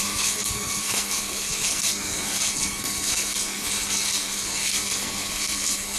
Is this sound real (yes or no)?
no